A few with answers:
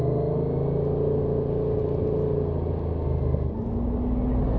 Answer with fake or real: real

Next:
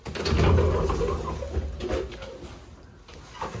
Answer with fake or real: real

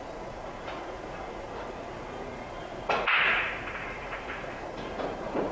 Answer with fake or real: fake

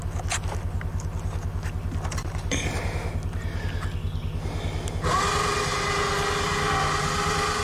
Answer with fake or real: real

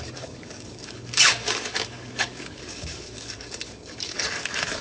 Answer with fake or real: fake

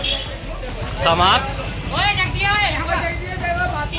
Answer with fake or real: real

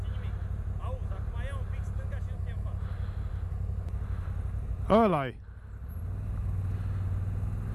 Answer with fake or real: real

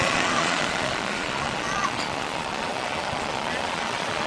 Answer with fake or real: fake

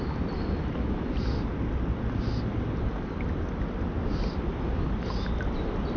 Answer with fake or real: real